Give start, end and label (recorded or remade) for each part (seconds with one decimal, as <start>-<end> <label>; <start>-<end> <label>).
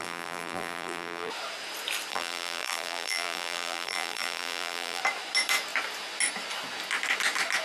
0.0-1.3 remade; 1.3-2.1 recorded; 2.1-5.0 remade; 5.0-7.6 recorded